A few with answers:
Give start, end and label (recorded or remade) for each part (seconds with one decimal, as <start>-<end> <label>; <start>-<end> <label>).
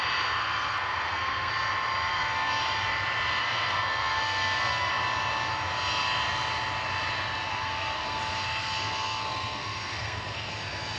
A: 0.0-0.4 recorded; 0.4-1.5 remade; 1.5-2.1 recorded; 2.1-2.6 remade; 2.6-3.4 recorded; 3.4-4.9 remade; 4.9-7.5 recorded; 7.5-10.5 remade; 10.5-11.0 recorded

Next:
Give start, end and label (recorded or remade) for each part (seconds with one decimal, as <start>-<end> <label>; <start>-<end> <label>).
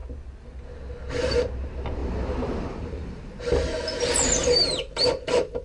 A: 0.0-2.0 recorded; 2.0-3.4 remade; 3.4-4.4 recorded; 4.4-5.6 remade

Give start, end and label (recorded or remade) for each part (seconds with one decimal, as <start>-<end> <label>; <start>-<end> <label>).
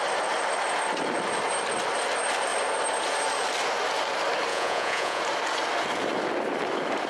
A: 0.0-4.5 recorded; 4.5-5.2 remade; 5.2-7.1 recorded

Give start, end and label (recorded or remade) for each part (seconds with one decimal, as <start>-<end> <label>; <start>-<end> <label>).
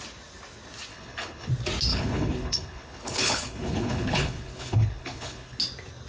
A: 0.0-0.9 recorded; 0.9-1.5 remade; 1.5-1.9 recorded; 1.9-5.6 remade; 5.6-6.1 recorded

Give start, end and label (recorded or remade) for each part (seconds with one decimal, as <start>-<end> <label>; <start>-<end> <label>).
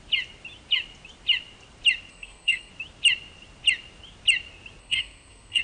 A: 0.0-2.1 recorded; 2.1-2.7 remade; 2.7-4.8 recorded; 4.8-5.6 remade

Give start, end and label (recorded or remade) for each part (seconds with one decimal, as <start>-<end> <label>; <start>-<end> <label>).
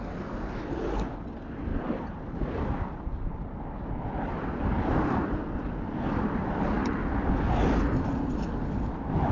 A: 0.0-1.7 recorded; 1.7-6.0 remade; 6.0-9.3 recorded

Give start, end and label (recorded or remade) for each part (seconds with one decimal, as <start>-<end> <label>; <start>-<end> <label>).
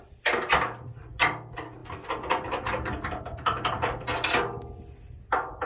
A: 0.0-5.7 recorded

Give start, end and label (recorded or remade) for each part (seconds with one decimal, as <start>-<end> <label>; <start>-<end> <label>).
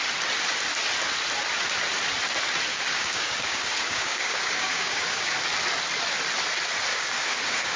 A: 0.0-2.7 recorded; 2.7-5.3 remade; 5.3-6.9 recorded; 6.9-7.8 remade